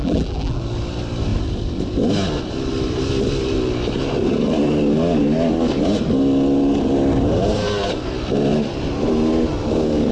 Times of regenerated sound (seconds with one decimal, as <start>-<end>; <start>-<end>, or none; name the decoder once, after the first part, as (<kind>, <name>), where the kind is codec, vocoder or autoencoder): 0.0-0.6 (vocoder, BigVGAN v2)